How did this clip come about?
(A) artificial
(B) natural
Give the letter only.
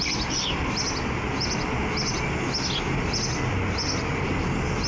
B